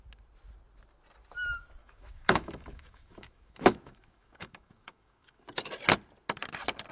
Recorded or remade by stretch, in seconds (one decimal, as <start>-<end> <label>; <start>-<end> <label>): 0.0-1.8 recorded; 1.8-5.4 remade; 5.4-6.9 recorded